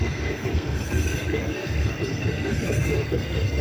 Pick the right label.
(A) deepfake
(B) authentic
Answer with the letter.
A